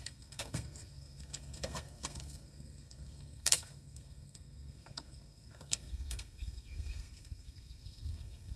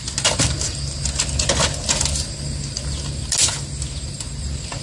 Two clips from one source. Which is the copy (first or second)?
first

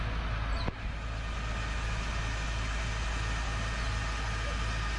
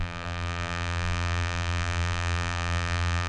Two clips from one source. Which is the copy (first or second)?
second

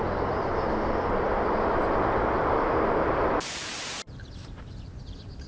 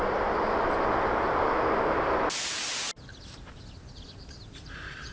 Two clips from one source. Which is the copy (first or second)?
first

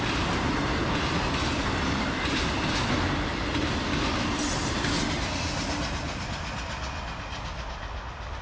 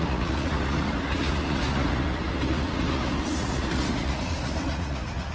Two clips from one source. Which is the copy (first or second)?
second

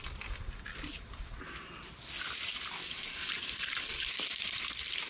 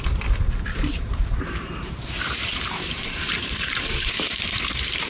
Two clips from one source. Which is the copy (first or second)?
second